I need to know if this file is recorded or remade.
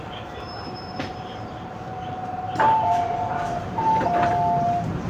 remade